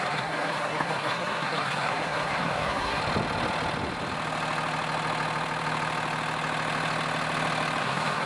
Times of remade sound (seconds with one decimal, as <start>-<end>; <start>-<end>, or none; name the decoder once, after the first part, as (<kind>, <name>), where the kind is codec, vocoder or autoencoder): 0.0-3.0 (codec, SNAC); 7.8-8.3